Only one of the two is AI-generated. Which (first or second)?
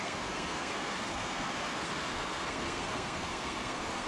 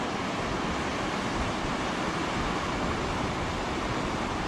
first